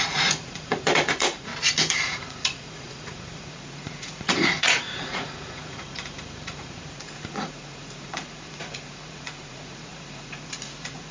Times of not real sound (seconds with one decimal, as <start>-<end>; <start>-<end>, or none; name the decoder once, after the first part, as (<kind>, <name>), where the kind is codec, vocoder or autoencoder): 0.0-1.5 (vocoder, Vocos); 2.0-11.1